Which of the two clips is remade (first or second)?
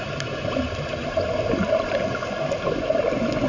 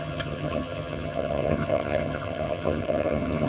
second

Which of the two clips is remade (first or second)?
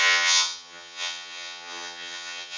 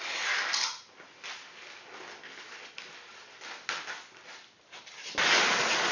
first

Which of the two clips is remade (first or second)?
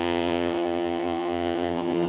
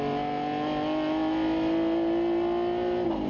first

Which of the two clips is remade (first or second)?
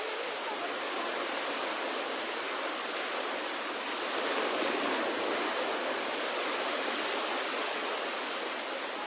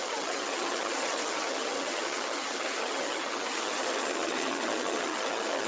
second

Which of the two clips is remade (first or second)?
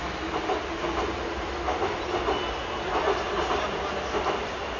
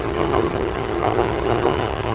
second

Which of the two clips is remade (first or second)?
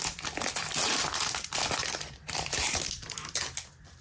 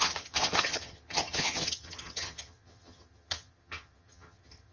second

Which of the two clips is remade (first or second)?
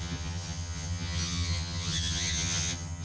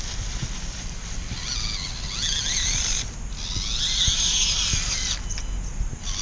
first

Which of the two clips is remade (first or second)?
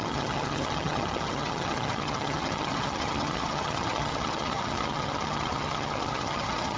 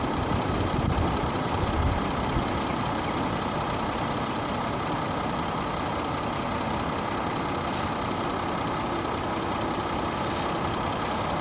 first